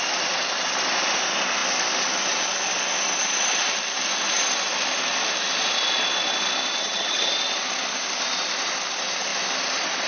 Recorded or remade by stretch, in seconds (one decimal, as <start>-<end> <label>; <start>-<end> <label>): 0.0-6.8 recorded; 6.8-7.3 remade; 7.3-10.1 recorded